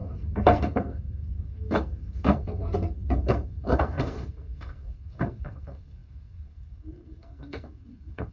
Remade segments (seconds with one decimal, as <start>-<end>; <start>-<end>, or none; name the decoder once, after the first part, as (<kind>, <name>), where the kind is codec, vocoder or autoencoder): 0.0-8.3 (codec, SNAC)